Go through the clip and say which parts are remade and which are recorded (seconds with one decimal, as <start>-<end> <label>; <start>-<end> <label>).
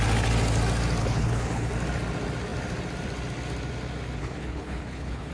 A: 0.0-1.0 recorded; 1.0-1.7 remade; 1.7-4.2 recorded; 4.2-5.3 remade